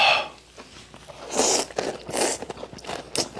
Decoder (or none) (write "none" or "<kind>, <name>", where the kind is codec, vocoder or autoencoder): none